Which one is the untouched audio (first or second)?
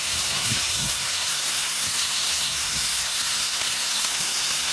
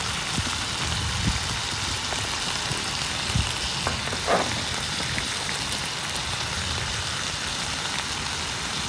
second